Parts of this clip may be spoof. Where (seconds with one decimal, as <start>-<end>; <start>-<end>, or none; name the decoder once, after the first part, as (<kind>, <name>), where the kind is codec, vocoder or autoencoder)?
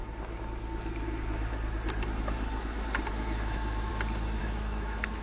3.1-3.9 (autoencoder, DAC-VAE); 4.4-5.2